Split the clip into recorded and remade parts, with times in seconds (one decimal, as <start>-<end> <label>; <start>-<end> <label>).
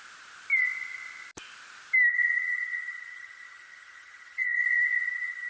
0.0-2.1 recorded; 2.1-5.5 remade